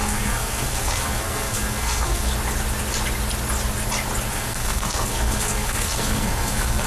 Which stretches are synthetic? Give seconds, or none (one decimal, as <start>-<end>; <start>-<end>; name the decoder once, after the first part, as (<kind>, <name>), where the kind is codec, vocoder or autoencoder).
0.0-2.3 (codec, SNAC); 4.3-6.9